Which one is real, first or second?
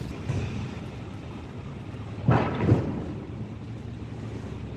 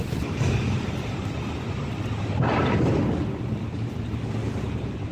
first